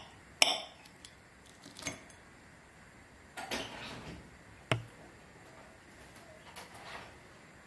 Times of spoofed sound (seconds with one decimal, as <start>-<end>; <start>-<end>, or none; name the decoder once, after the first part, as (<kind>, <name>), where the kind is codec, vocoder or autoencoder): 0.5-1.8 (vocoder, BigVGAN v2)